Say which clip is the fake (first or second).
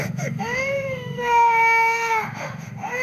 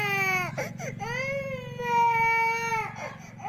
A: first